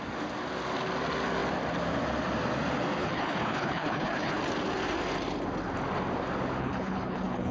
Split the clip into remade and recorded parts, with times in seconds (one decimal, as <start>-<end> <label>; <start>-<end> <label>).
0.0-3.0 recorded; 3.0-4.4 remade; 4.4-6.6 recorded; 6.6-7.5 remade